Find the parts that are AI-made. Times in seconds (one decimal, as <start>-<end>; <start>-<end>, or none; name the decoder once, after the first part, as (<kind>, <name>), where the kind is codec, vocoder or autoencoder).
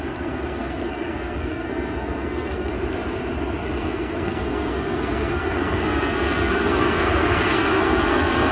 0.0-2.7 (codec, SNAC); 3.6-8.5